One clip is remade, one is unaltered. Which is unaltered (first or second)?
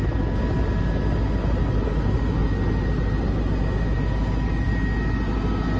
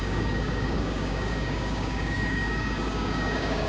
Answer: first